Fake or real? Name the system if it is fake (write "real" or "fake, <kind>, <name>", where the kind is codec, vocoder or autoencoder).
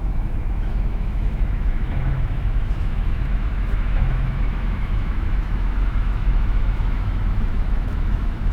fake, autoencoder, DAC-VAE